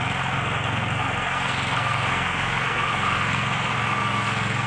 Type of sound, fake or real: fake